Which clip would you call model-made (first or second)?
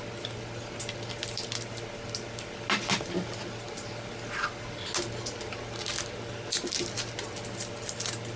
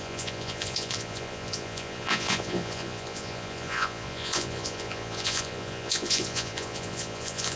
second